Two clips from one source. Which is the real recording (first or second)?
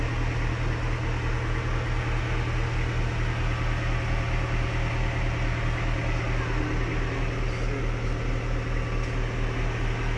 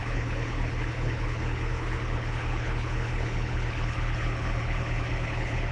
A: first